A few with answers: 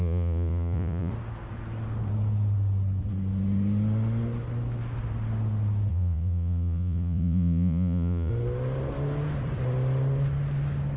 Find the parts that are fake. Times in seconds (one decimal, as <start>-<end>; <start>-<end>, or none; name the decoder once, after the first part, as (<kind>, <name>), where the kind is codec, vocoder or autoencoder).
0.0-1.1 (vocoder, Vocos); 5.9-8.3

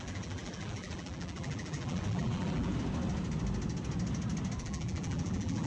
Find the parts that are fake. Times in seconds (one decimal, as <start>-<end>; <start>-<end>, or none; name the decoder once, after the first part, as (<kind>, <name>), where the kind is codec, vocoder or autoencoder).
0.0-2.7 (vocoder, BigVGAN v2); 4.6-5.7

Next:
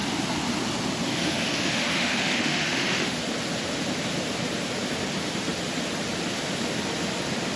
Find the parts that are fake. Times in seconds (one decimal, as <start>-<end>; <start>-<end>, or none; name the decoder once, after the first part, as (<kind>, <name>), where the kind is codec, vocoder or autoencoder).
1.1-3.2 (autoencoder, DAC-VAE)